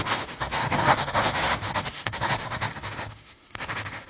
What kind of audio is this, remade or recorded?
remade